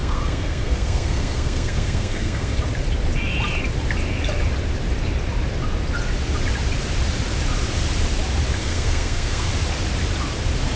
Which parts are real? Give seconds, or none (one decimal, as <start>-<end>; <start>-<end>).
2.6-8.6; 9.5-10.8